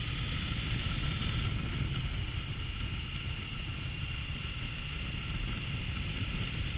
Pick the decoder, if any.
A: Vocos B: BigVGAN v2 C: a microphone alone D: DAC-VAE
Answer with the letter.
C